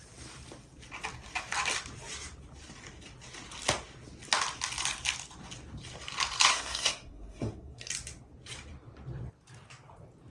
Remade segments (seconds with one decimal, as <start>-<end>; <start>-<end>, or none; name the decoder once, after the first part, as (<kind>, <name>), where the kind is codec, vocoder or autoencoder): 6.5-7.9 (codec, SNAC)